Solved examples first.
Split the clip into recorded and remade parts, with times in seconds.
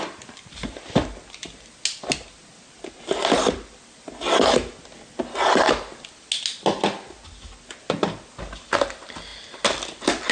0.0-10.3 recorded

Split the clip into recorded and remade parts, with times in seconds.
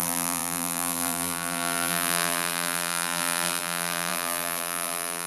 0.0-5.3 remade